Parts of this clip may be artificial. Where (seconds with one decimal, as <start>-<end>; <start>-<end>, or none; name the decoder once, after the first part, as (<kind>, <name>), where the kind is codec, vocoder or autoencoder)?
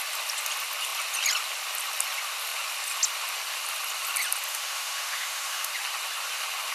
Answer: 4.5-5.7 (autoencoder, DAC-VAE)